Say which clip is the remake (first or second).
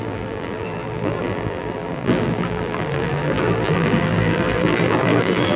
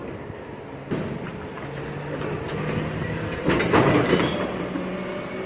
first